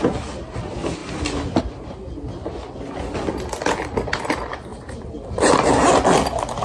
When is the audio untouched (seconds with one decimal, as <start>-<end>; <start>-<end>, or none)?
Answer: 0.0-4.7; 5.8-6.6